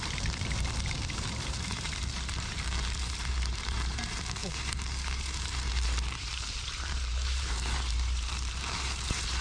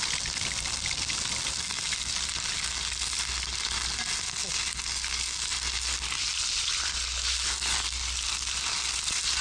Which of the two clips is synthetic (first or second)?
first